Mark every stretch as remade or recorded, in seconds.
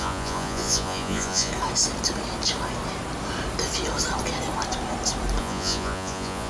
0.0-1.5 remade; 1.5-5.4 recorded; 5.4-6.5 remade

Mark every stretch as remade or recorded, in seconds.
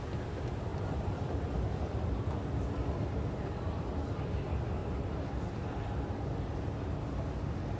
0.0-0.7 recorded; 0.7-4.2 remade; 4.2-4.8 recorded; 4.8-7.1 remade; 7.1-7.8 recorded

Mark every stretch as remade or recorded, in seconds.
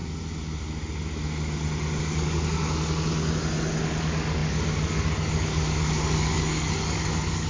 0.0-2.0 recorded; 2.0-3.1 remade; 3.1-3.8 recorded; 3.8-7.5 remade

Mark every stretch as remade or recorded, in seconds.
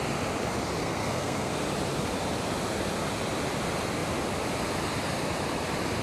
0.0-0.8 recorded; 0.8-1.5 remade; 1.5-6.0 recorded